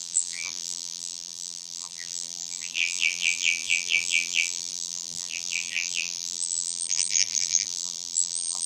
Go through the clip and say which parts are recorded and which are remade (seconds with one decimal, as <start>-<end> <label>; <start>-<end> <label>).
0.0-8.7 remade